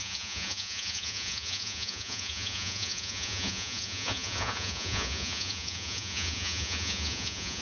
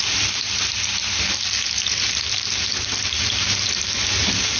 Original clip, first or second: second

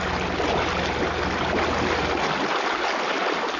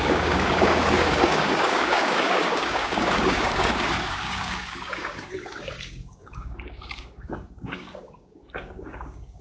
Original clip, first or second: first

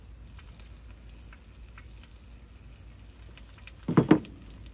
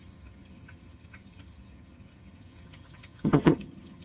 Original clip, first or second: first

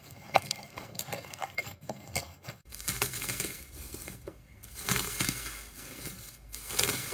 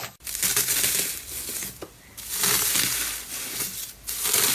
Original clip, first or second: second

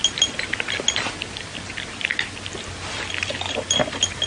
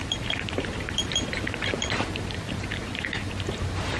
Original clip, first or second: first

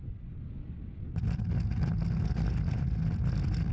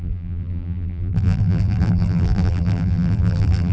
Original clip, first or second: first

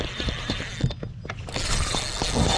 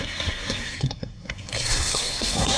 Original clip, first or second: first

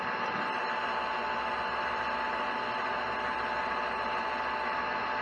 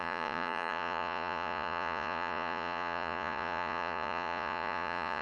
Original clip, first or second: first